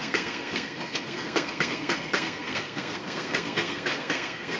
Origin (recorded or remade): remade